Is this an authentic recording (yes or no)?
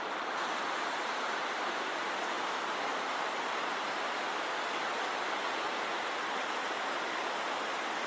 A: yes